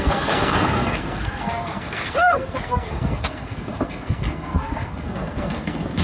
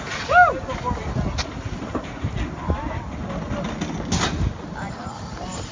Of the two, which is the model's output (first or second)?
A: first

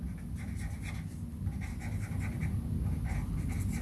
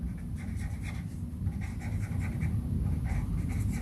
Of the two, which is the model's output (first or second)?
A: second